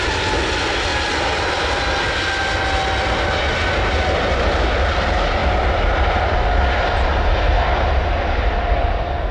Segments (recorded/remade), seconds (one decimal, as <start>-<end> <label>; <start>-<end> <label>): 0.0-9.3 recorded